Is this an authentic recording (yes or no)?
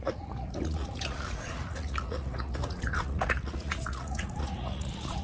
no